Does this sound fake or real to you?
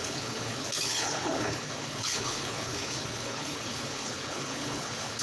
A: fake